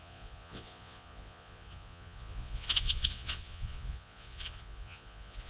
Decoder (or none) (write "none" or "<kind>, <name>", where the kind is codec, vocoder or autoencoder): vocoder, Vocos